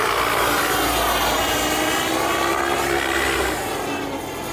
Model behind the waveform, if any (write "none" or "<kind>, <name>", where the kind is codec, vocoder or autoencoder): none